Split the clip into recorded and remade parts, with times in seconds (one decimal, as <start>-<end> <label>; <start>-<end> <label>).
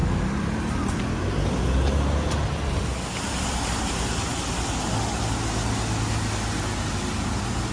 0.0-7.7 recorded